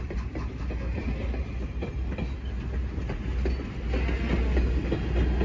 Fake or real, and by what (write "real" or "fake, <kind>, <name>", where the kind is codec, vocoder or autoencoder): real